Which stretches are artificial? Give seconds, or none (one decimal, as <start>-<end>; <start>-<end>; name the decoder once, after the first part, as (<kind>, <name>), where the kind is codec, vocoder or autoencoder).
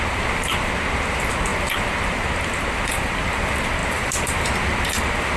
0.0-5.4 (vocoder, BigVGAN v2)